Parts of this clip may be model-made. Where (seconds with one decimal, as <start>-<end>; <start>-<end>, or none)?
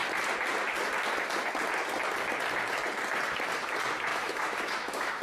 4.1-5.2